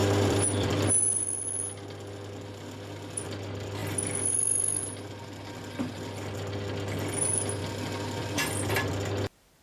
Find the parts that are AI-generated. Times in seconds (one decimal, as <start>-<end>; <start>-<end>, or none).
0.0-0.7